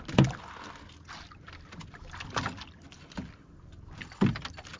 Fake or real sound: real